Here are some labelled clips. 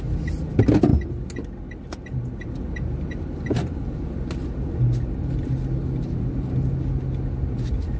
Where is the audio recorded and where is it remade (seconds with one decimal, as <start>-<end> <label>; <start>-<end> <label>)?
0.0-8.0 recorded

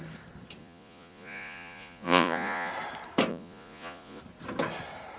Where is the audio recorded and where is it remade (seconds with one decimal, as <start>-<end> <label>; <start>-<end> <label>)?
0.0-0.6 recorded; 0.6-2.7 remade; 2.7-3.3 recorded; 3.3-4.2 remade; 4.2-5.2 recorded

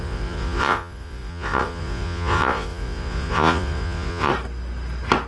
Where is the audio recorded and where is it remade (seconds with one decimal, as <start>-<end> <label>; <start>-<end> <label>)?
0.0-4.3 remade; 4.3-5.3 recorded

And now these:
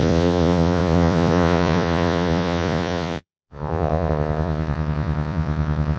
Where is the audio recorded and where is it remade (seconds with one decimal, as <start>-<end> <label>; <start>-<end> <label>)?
0.0-6.0 remade

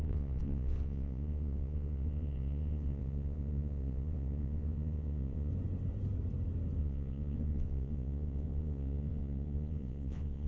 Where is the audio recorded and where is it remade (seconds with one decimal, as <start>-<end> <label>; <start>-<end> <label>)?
0.0-5.5 remade; 5.5-6.8 recorded; 6.8-10.5 remade

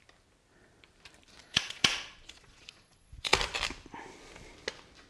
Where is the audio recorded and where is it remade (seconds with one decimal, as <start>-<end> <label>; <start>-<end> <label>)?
0.0-1.4 recorded; 1.4-3.3 remade; 3.3-5.1 recorded